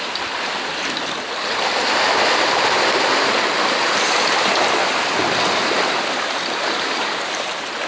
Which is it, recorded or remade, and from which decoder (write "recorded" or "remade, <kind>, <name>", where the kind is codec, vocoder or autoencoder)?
remade, vocoder, BigVGAN v2